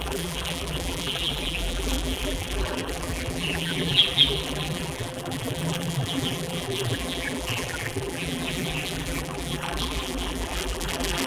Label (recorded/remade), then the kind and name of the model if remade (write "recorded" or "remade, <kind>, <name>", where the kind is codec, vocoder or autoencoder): remade, vocoder, BigVGAN v2